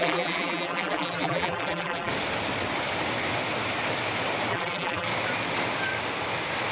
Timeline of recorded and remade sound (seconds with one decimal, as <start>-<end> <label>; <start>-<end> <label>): 0.0-2.1 remade; 2.1-4.5 recorded; 4.5-5.1 remade; 5.1-6.7 recorded